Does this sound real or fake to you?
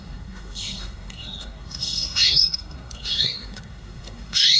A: fake